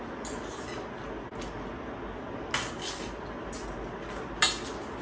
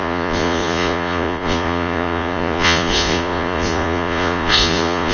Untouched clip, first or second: first